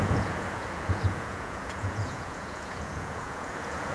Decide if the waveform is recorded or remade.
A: remade